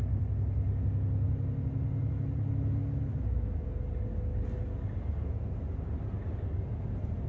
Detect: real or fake real